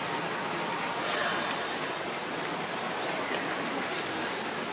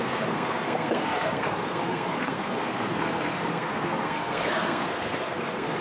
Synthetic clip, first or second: second